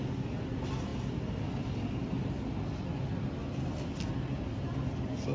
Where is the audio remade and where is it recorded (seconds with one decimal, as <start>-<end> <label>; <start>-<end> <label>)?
0.0-5.3 recorded